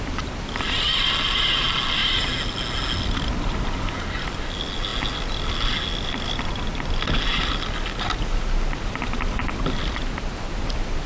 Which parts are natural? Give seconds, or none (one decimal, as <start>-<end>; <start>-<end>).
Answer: 0.0-11.1